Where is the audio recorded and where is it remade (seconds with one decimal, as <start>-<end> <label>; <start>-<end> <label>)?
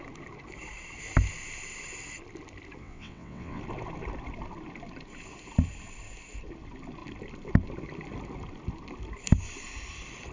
0.0-2.8 recorded; 2.8-3.6 remade; 3.6-10.3 recorded